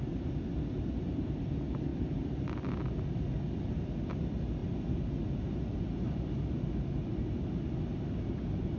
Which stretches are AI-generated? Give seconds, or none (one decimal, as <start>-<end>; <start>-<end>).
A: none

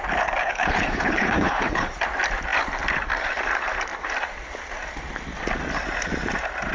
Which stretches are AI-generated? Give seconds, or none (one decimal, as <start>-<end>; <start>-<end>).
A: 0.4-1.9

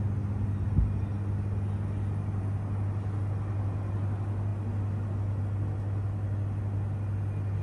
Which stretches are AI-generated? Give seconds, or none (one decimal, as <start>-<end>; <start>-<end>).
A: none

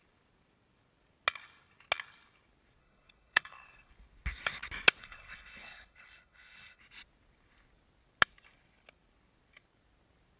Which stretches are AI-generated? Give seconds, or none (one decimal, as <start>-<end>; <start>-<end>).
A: 2.8-3.9; 5.0-6.8

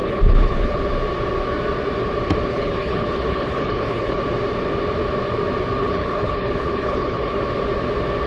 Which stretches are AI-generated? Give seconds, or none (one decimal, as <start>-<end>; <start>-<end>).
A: 0.0-0.8; 2.5-4.2; 5.8-7.4

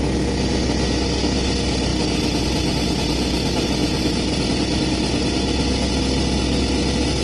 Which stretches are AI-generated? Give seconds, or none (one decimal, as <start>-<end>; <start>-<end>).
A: none